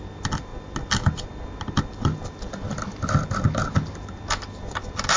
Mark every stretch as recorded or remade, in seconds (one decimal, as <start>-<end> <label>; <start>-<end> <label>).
0.0-5.2 recorded